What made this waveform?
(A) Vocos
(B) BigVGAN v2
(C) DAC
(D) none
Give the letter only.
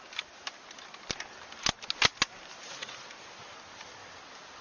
D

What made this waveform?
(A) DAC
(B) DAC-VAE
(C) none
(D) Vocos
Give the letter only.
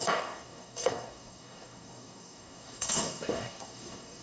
A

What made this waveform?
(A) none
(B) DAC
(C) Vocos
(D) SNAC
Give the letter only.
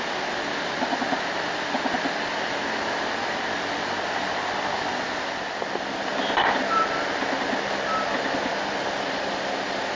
A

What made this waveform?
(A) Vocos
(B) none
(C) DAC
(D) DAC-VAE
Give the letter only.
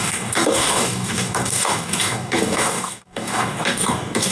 C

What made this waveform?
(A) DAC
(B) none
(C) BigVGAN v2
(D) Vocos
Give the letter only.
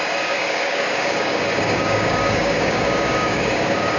A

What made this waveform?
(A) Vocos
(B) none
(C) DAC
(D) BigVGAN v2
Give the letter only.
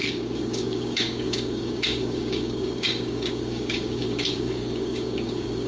C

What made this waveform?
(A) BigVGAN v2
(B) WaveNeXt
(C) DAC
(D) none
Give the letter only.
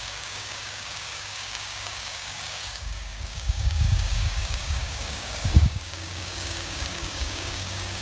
C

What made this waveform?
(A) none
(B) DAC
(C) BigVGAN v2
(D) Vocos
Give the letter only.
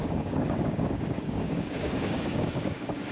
B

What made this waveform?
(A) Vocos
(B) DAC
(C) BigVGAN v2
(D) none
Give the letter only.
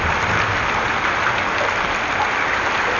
D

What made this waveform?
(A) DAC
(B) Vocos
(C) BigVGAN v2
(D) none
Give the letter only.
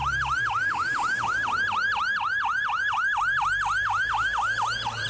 D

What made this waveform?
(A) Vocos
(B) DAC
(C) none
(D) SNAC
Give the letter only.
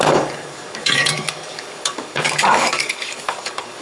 B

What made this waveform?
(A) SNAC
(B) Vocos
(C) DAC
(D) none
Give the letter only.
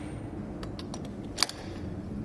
D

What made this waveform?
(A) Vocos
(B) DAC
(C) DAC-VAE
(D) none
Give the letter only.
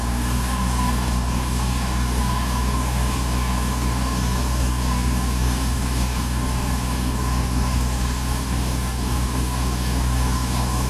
B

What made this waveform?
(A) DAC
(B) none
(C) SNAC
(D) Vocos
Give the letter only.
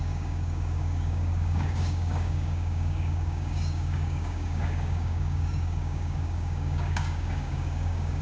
A